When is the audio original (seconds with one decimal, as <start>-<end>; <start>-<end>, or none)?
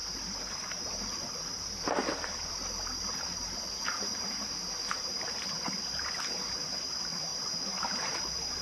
none